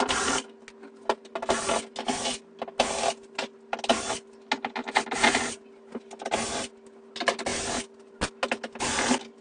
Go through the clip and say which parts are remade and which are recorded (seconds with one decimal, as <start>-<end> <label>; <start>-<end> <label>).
0.0-9.4 recorded